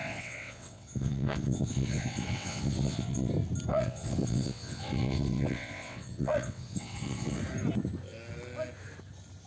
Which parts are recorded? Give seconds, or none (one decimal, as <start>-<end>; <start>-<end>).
3.3-3.7; 7.4-9.5